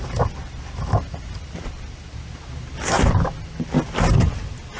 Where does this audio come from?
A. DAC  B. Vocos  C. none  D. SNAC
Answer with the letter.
C